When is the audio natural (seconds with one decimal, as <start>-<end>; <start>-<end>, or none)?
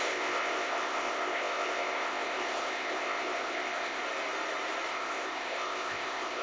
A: 4.0-4.9